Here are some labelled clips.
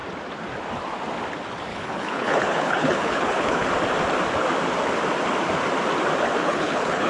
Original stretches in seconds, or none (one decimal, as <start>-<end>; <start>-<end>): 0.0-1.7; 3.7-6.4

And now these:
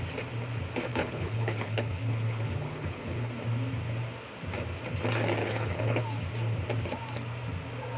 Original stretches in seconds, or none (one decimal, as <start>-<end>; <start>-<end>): 0.0-0.9; 3.3-5.4; 6.0-8.0

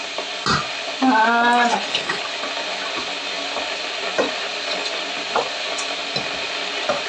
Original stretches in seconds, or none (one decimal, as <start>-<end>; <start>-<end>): 0.0-1.7; 2.2-7.1